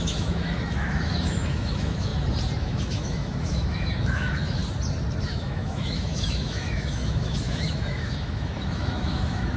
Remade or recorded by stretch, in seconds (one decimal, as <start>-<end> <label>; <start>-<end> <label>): 0.0-2.1 remade; 2.1-2.6 recorded; 2.6-4.6 remade; 4.6-5.2 recorded; 5.2-9.6 remade